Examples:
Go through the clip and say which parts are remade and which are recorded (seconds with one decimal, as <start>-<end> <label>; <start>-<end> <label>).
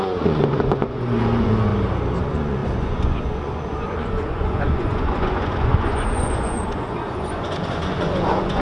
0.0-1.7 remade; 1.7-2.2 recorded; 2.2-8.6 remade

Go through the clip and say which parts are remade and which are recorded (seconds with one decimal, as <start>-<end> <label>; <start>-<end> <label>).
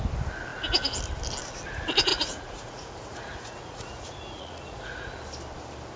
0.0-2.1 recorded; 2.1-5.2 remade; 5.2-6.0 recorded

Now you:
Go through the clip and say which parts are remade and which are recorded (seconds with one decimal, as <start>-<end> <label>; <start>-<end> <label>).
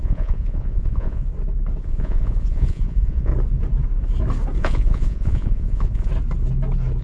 0.0-1.3 remade; 1.3-1.8 recorded; 1.8-3.3 remade; 3.3-4.6 recorded; 4.6-6.1 remade; 6.1-7.0 recorded